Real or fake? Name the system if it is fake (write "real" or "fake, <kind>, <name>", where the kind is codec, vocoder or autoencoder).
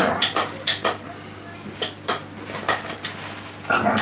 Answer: real